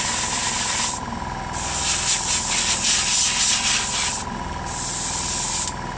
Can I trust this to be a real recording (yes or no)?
yes